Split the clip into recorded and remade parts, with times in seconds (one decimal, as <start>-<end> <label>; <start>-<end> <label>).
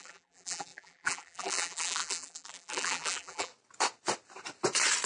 0.0-3.5 remade; 3.5-5.1 recorded